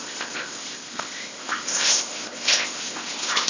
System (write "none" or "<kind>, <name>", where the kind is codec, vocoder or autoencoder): codec, ZipCodec